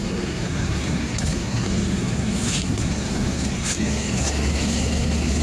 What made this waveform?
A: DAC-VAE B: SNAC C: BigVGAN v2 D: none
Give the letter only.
B